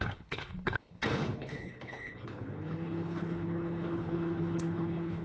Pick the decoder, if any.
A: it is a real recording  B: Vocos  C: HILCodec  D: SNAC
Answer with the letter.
C